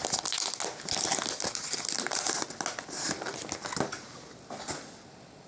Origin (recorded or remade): recorded